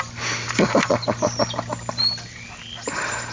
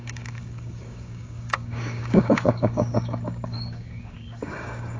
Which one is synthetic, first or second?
second